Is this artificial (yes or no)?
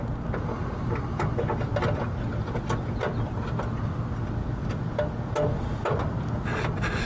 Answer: no